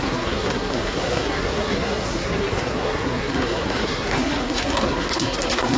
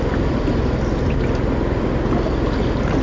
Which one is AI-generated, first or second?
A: first